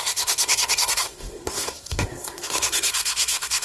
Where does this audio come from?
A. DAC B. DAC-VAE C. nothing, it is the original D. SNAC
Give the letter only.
D